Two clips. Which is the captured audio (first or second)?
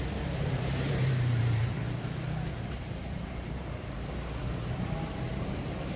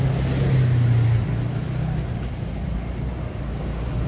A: second